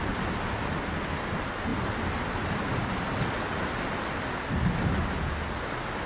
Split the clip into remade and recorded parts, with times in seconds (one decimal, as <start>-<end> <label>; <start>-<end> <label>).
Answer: 0.0-6.1 recorded